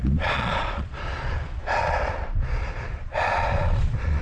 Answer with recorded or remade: remade